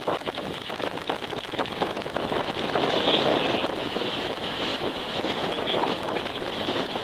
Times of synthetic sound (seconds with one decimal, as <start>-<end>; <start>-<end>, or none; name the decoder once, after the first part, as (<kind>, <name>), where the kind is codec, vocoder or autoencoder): 0.0-3.3 (autoencoder, DAC-VAE); 3.8-7.0